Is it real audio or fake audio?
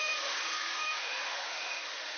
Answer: fake